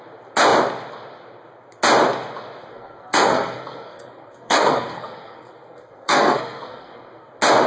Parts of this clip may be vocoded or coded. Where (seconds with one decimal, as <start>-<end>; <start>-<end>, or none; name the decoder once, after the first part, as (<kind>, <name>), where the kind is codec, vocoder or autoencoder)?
2.7-7.3 (codec, SNAC)